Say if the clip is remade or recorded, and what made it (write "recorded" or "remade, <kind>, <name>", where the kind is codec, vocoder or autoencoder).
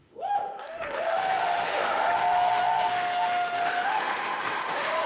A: remade, autoencoder, DAC-VAE